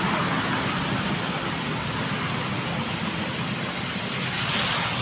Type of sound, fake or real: real